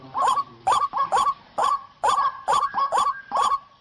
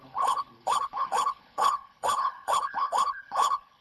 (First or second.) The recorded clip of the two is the first